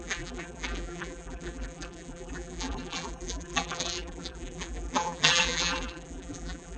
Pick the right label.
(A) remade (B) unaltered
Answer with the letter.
A